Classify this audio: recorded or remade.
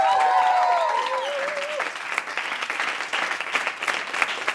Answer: recorded